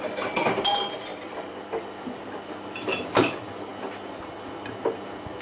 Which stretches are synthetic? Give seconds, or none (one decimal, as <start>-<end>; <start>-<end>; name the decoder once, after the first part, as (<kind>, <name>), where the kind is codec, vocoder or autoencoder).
1.1-3.0 (vocoder, BigVGAN v2); 3.7-4.3